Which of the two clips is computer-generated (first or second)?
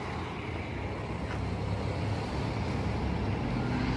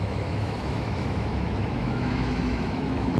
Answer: second